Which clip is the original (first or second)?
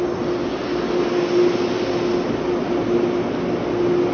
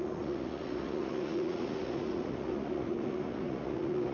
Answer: first